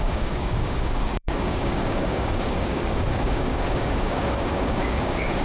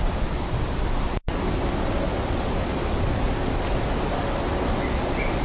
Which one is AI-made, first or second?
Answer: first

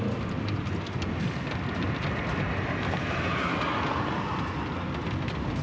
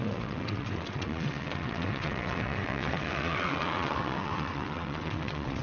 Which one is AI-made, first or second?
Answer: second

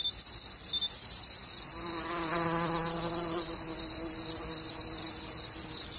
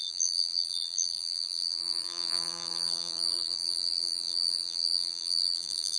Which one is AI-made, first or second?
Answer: second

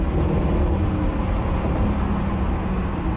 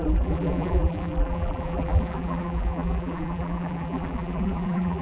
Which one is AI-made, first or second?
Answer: second